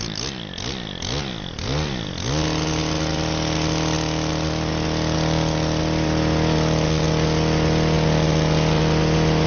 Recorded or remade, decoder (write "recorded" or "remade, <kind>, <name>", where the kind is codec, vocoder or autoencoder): recorded